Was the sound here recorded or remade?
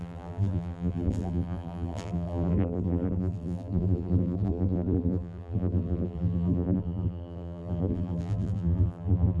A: remade